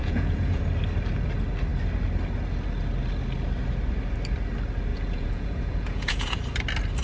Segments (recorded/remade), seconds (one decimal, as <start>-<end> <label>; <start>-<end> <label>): 0.0-0.6 remade; 0.6-4.9 recorded; 4.9-6.4 remade; 6.4-7.0 recorded